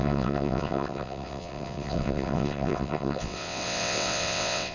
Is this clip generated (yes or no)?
yes